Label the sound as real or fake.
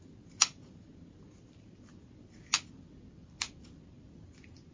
real